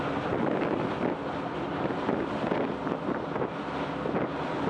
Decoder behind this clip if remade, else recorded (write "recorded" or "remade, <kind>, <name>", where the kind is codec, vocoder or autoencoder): recorded